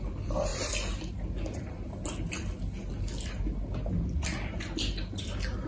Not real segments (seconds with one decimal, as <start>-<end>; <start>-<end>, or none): none